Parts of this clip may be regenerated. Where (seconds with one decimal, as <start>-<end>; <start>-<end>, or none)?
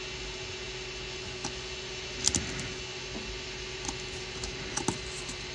none